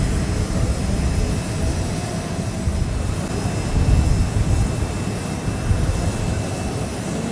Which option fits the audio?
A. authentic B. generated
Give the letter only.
A